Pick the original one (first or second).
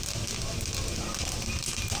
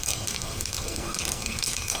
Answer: first